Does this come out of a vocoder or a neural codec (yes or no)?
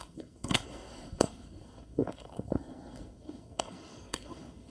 yes